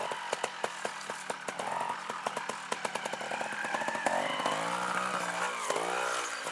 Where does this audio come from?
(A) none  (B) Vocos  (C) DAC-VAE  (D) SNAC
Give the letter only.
A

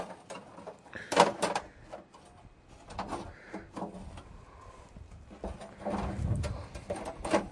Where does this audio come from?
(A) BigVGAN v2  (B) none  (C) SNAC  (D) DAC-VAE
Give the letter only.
B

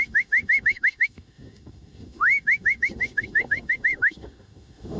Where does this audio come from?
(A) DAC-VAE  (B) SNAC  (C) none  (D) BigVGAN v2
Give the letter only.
A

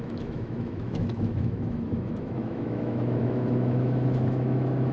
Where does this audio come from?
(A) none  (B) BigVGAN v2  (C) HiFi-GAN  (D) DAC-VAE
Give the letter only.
D